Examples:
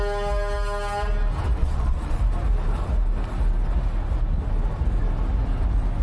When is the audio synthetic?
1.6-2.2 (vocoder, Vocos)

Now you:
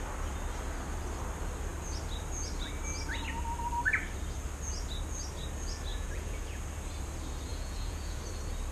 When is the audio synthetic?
5.9-6.6 (vocoder, Vocos); 7.5-8.2